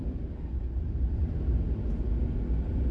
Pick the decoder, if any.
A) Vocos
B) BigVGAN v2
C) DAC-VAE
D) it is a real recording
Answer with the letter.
D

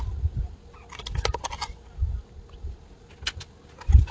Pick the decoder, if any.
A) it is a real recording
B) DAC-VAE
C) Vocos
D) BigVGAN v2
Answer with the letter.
A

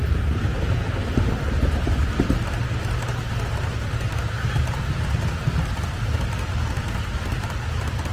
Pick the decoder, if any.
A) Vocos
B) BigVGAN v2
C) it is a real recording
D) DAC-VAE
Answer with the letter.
C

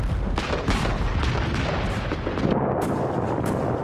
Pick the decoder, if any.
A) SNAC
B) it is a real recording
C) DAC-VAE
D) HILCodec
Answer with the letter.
B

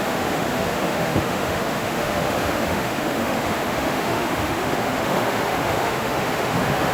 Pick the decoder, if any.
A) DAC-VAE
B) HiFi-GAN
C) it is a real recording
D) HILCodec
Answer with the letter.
A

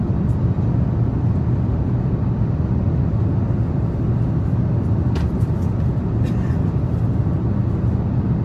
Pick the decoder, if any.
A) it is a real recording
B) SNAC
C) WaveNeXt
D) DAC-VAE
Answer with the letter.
A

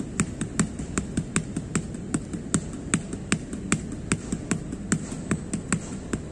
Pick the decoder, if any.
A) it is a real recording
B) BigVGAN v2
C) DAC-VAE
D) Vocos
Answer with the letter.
A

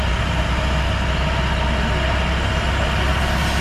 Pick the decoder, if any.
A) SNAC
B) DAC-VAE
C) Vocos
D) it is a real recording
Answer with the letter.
D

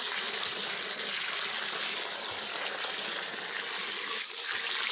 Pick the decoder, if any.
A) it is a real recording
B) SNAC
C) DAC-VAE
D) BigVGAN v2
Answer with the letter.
A